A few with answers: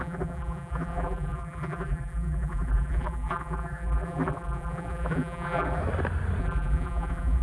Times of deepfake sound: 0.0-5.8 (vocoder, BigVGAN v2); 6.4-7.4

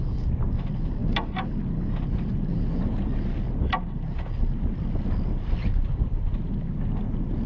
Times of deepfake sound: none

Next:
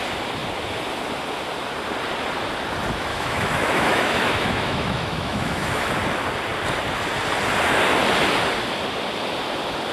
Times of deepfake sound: 3.1-5.9 (autoencoder, DAC-VAE)

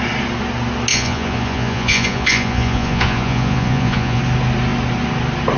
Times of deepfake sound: 0.9-4.2 (vocoder, Vocos)

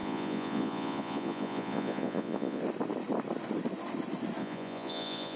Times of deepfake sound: 0.0-2.6 (vocoder, Vocos); 4.4-5.4

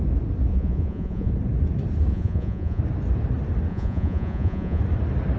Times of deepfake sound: 0.5-1.3 (vocoder, Vocos); 2.1-2.8; 3.7-4.8

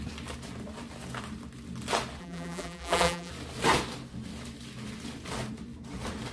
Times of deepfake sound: 2.2-3.3 (vocoder, BigVGAN v2)

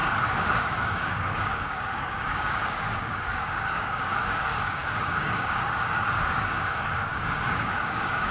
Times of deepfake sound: 0.0-8.3 (codec, DAC)